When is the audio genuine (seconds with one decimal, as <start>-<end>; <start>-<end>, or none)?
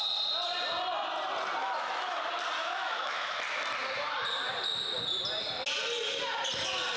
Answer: 0.0-1.6; 2.2-2.6; 3.4-7.0